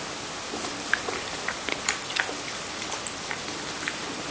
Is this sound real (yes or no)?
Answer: yes